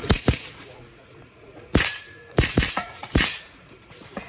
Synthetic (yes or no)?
yes